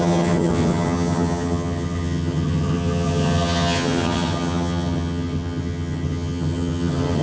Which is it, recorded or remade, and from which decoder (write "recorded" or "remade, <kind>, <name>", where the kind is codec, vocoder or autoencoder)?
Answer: remade, vocoder, HiFi-GAN